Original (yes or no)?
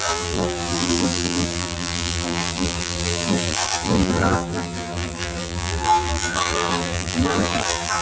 no